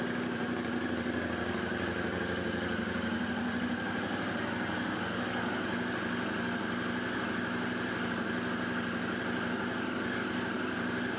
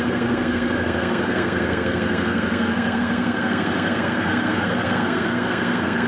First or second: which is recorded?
first